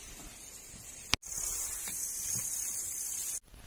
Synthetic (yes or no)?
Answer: no